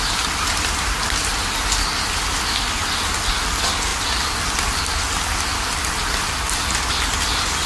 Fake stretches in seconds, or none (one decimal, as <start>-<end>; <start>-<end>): none